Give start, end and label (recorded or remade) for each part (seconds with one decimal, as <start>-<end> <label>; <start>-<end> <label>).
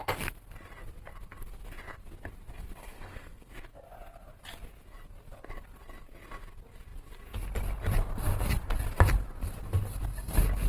0.0-2.8 recorded; 2.8-3.5 remade; 3.5-10.7 recorded